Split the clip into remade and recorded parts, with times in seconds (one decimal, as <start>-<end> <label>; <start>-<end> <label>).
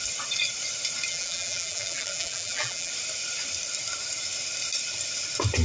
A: 0.0-1.1 recorded; 1.1-2.9 remade; 2.9-5.6 recorded